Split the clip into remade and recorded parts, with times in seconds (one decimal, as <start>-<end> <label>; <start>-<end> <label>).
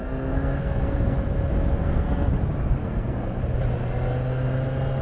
0.0-1.2 remade; 1.2-1.7 recorded; 1.7-2.3 remade; 2.3-2.8 recorded; 2.8-3.4 remade; 3.4-5.0 recorded